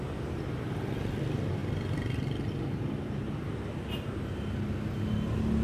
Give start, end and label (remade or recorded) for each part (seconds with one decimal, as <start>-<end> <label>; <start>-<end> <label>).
0.0-5.6 recorded